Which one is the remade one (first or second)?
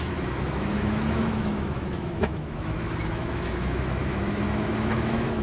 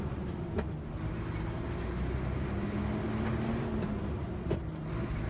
first